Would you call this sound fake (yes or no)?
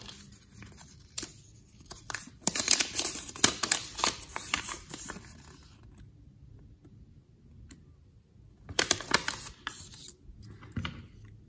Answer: no